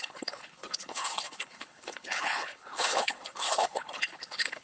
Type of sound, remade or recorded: remade